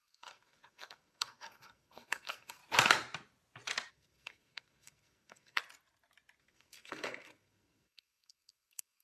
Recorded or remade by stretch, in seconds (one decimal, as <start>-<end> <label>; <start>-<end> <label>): 0.0-2.6 remade; 2.6-3.9 recorded; 3.9-5.6 remade; 5.6-6.4 recorded; 6.4-9.0 remade